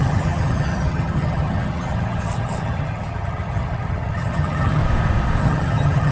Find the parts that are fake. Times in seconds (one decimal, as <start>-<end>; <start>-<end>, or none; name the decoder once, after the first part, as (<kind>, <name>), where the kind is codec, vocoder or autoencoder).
0.0-4.8 (vocoder, HiFi-GAN); 5.4-6.1